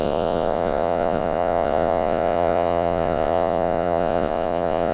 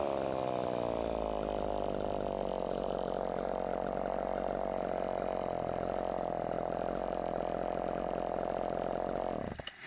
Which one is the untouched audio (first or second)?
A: second